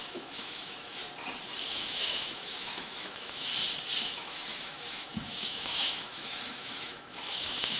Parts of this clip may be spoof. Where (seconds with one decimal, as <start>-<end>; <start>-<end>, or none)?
0.0-1.0; 1.7-3.5; 4.0-7.8